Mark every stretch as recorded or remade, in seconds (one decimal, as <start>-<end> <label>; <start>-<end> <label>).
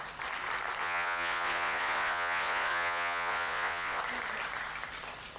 0.0-0.8 recorded; 0.8-4.0 remade; 4.0-5.4 recorded